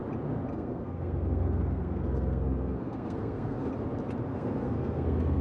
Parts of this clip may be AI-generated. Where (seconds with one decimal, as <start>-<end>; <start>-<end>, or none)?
0.5-3.7; 4.3-5.4